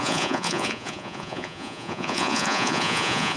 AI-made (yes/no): yes